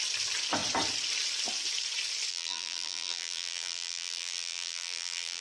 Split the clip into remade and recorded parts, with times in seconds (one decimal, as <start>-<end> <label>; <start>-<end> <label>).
0.0-2.3 recorded; 2.3-5.4 remade